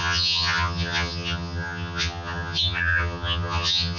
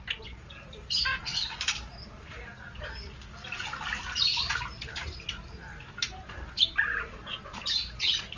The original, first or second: second